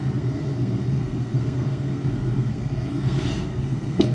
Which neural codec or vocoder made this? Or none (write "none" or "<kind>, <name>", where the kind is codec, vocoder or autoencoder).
codec, SNAC